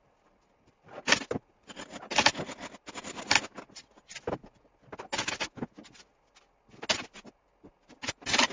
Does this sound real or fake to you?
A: real